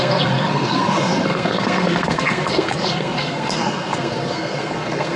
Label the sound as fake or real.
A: fake